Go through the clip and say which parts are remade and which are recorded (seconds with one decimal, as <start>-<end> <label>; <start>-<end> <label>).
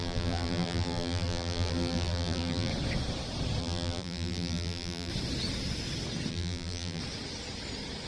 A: 0.0-2.7 remade; 2.7-3.6 recorded; 3.6-5.1 remade; 5.1-6.3 recorded; 6.3-7.0 remade; 7.0-8.1 recorded